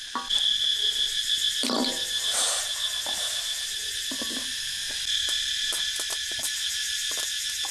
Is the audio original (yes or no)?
yes